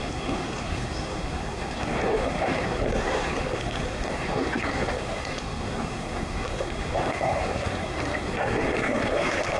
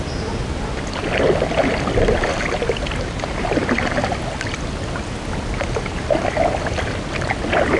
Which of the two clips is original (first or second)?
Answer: second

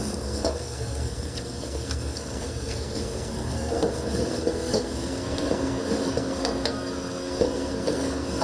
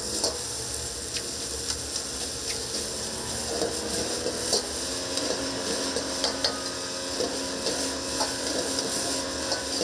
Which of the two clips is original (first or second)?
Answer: second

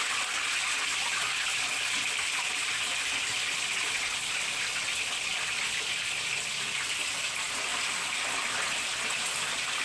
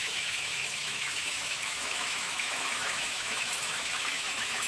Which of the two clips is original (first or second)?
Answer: first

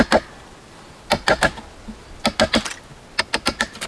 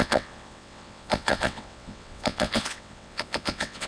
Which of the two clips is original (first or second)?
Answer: first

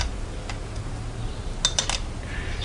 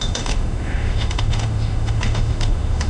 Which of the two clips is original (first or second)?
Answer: first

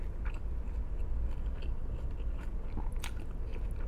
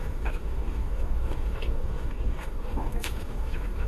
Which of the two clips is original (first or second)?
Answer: first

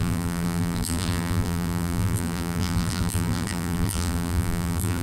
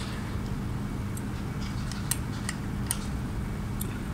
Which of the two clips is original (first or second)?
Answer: second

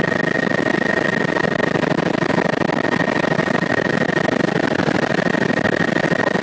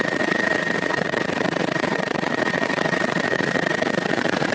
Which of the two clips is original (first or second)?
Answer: first